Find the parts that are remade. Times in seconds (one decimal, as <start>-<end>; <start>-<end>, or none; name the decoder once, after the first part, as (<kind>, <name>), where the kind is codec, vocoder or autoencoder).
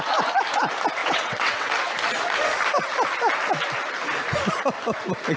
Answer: 1.0-1.7 (vocoder, WaveNeXt)